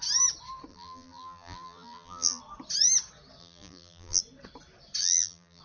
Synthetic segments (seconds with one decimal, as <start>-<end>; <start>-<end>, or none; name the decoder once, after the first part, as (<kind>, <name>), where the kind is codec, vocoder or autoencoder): 0.7-2.4 (vocoder, BigVGAN v2); 3.4-4.2; 5.0-5.6